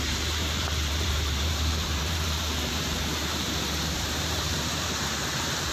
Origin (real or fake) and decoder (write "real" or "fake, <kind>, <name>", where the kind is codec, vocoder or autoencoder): fake, vocoder, BigVGAN v2